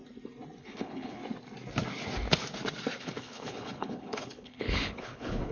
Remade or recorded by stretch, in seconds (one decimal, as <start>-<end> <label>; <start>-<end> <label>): 0.0-0.6 recorded; 0.6-1.2 remade; 1.2-3.0 recorded; 3.0-5.5 remade